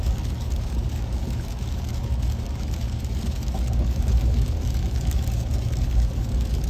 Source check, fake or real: fake